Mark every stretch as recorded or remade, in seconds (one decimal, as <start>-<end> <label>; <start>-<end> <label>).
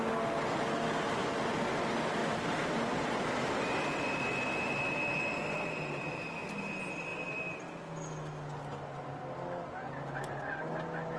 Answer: 0.0-2.2 recorded; 2.2-3.3 remade; 3.3-11.2 recorded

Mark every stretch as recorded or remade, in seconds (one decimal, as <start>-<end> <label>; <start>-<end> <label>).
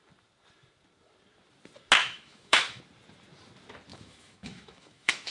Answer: 0.0-2.0 recorded; 2.0-2.8 remade; 2.8-3.9 recorded; 3.9-5.3 remade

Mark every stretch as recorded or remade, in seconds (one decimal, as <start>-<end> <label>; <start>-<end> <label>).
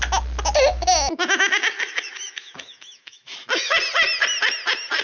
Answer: 0.0-0.7 recorded; 0.7-3.7 remade; 3.7-5.0 recorded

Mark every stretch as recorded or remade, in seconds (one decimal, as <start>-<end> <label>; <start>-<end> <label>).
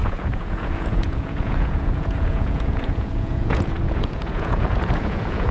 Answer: 0.0-5.5 remade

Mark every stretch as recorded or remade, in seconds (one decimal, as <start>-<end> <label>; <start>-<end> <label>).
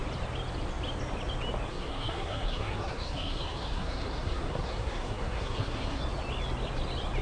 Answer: 0.0-1.7 recorded; 1.7-6.0 remade; 6.0-7.2 recorded